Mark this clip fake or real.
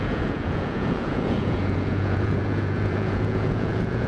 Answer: fake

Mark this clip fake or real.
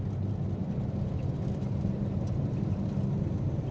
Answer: real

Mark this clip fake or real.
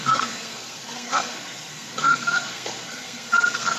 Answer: fake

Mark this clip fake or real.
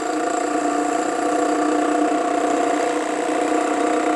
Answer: real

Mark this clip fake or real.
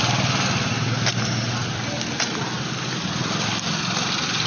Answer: real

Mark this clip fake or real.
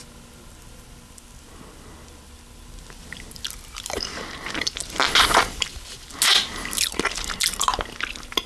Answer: real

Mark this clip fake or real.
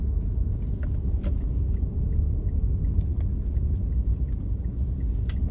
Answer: real